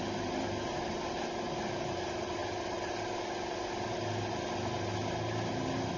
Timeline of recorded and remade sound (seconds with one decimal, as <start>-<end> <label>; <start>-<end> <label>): 0.0-6.0 recorded